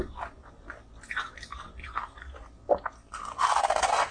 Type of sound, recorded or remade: recorded